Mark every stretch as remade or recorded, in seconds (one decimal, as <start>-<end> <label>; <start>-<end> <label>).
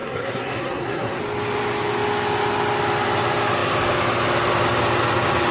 0.0-1.2 remade; 1.2-5.5 recorded